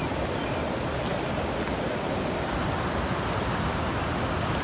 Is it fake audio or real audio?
real